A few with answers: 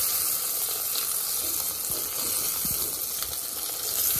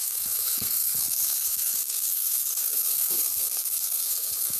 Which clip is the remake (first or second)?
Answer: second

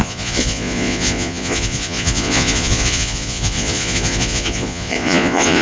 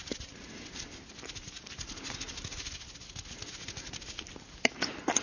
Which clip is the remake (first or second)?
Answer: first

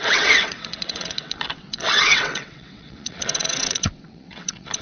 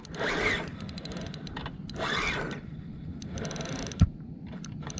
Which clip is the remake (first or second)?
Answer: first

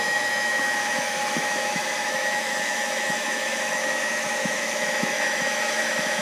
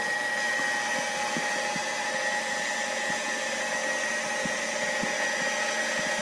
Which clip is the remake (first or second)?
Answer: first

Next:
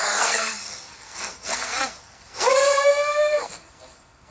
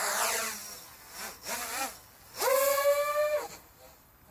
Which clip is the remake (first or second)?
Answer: first